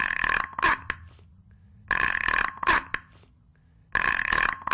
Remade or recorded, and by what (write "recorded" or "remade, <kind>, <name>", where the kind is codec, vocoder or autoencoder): recorded